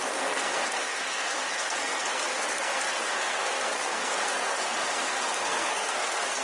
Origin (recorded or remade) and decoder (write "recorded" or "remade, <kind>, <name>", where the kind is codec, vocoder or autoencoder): remade, codec, SNAC